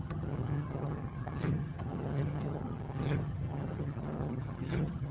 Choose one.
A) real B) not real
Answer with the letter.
B